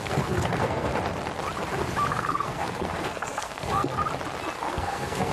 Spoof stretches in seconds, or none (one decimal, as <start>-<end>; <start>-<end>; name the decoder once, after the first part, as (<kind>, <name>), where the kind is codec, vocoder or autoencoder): 0.0-0.9 (codec, SNAC); 2.1-4.0; 4.6-5.3